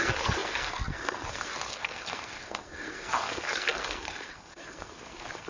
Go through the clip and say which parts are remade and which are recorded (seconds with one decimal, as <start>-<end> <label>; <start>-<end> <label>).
0.0-5.5 remade